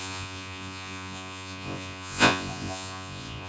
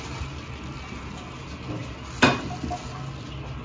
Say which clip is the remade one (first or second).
first